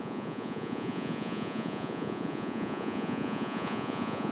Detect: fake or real fake